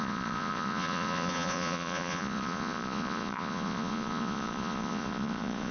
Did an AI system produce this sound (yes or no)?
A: yes